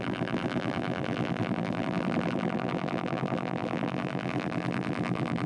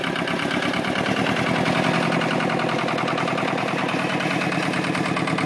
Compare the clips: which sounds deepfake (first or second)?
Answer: first